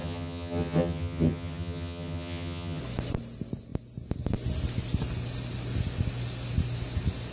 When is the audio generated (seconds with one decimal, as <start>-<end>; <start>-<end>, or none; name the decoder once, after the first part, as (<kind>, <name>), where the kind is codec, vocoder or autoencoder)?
0.0-2.8 (vocoder, HiFi-GAN)